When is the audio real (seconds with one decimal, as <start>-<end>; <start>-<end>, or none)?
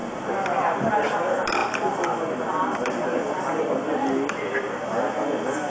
0.0-5.7